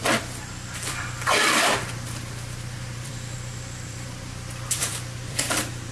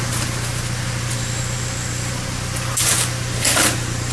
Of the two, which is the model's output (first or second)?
first